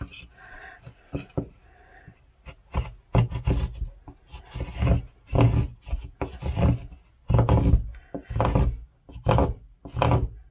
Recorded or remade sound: recorded